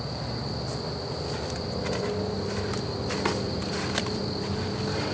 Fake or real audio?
real